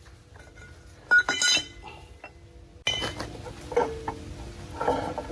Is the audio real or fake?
real